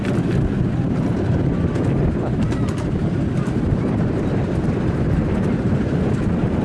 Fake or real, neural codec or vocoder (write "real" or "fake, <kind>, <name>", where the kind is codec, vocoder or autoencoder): real